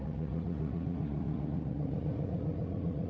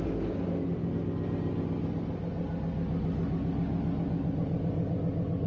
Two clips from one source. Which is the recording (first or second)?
second